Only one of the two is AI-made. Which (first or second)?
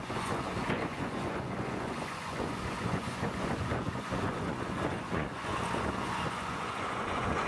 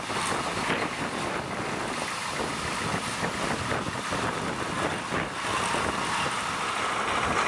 first